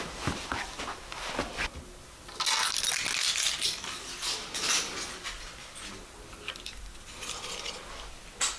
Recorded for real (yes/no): yes